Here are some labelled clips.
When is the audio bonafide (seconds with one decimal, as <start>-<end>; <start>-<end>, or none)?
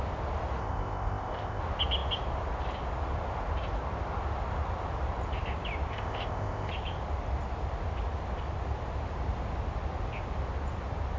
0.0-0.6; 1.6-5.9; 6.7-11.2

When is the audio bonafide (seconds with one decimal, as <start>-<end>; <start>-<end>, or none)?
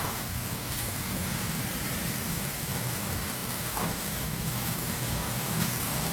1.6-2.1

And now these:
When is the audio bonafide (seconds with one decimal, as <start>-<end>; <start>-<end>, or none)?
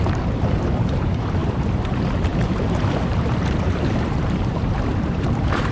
none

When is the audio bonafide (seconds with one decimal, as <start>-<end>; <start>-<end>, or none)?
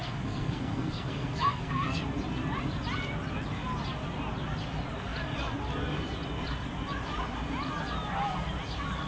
2.0-9.1